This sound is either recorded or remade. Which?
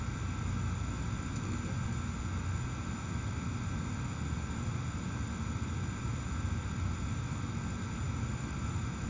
recorded